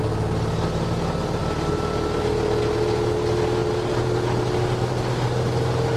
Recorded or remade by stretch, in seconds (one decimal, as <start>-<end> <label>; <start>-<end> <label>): 0.0-6.0 recorded